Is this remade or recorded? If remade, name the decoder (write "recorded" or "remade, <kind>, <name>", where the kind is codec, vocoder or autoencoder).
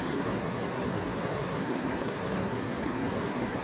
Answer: remade, codec, SNAC